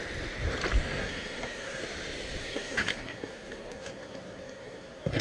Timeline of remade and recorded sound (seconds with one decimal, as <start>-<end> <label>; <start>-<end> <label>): 0.0-1.0 recorded; 1.0-1.8 remade; 1.8-2.4 recorded; 2.4-5.2 remade